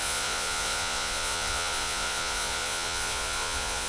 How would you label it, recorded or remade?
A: remade